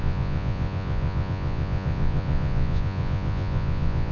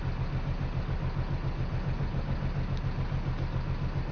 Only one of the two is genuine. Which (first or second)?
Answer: second